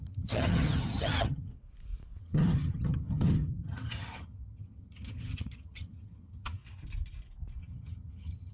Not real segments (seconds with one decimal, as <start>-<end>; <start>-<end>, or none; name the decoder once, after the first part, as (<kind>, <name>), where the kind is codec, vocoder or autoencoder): 0.0-1.5 (vocoder, HiFi-GAN); 2.2-6.6; 7.6-8.5